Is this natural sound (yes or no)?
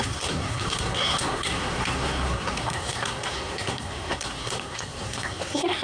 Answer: no